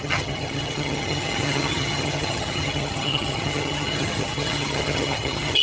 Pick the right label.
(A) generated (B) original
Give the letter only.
A